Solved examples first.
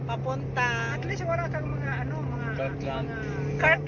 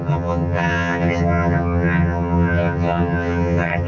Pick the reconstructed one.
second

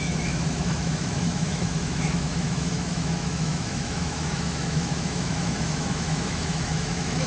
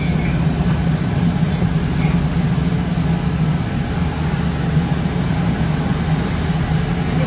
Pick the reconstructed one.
first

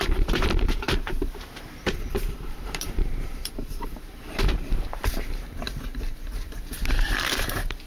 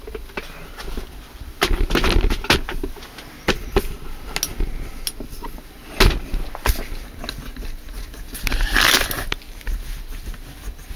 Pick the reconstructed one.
first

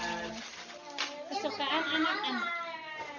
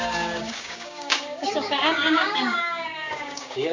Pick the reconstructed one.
second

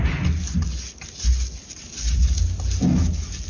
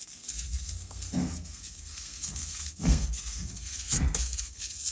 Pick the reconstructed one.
second